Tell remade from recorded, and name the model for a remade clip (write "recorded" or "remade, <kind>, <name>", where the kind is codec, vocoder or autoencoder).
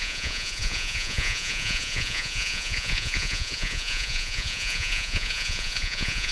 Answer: remade, vocoder, Vocos